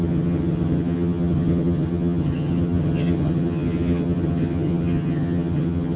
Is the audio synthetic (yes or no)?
yes